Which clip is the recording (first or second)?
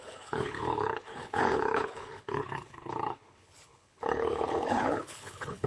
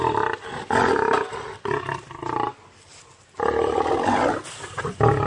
second